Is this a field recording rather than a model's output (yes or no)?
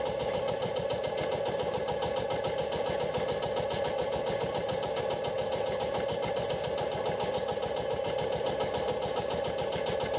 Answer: yes